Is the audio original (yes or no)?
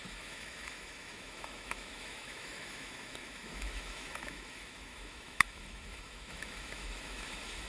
no